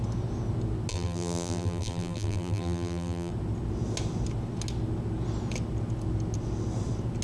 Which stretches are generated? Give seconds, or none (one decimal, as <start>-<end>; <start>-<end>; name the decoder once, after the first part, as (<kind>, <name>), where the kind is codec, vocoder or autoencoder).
0.9-3.3 (vocoder, BigVGAN v2)